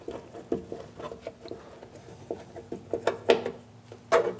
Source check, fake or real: real